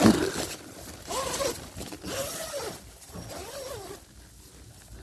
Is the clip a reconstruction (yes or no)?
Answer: no